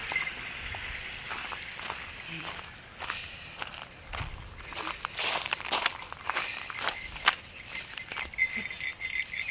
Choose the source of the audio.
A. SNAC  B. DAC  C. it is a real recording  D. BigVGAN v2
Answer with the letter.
D